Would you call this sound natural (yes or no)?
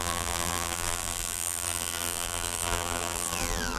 no